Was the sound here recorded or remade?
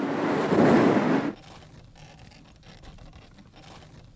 recorded